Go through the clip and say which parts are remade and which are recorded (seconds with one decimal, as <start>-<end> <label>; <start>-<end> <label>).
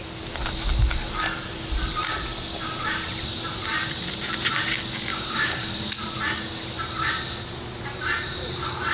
0.0-5.1 recorded; 5.1-5.7 remade; 5.7-8.9 recorded